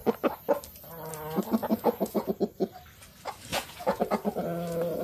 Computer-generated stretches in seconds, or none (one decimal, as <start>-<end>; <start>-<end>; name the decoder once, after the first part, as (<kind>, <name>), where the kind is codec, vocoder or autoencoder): 1.6-2.4 (vocoder, Vocos); 3.5-4.0